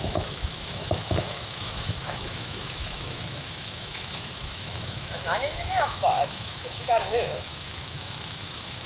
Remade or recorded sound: remade